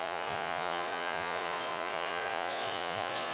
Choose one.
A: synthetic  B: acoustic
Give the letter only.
A